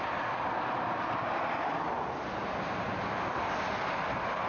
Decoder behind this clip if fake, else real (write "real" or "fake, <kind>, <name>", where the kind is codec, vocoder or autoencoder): real